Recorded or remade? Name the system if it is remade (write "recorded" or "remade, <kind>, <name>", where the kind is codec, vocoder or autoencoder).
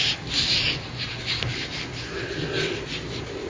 recorded